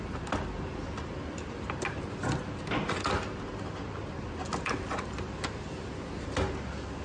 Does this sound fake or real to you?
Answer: real